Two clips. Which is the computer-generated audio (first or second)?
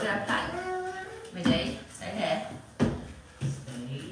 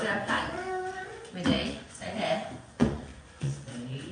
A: second